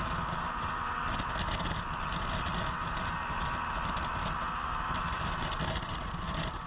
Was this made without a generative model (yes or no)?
yes